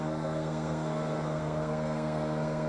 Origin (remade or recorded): remade